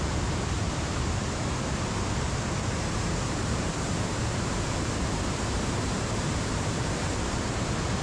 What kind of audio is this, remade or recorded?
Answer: remade